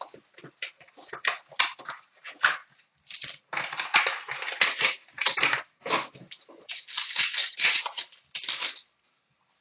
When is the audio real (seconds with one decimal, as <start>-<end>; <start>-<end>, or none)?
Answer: 0.0-7.4; 8.0-9.6